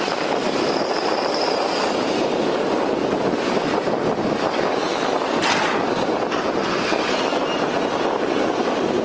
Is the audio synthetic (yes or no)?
no